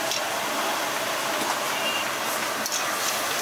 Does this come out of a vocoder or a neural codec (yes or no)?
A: no